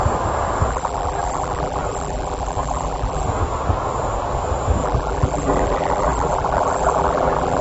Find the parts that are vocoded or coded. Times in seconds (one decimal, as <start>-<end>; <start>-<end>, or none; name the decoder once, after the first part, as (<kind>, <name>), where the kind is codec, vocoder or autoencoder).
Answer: 0.7-3.3 (vocoder, BigVGAN v2); 4.8-7.6